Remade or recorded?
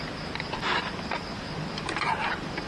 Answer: recorded